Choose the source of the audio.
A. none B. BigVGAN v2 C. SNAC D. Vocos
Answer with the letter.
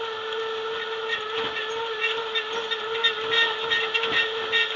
A